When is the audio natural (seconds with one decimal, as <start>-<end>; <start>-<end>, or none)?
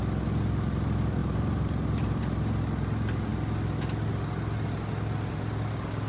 0.0-1.2; 2.2-6.1